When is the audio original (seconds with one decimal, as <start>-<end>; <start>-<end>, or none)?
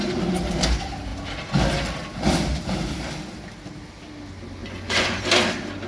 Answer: 0.0-4.6; 5.2-5.9